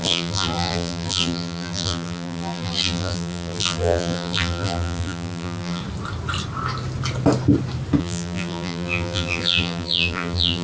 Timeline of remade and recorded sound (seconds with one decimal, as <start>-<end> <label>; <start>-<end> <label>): 0.0-5.8 remade; 5.8-8.0 recorded; 8.0-10.6 remade